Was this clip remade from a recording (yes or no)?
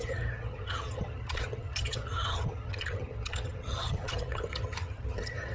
yes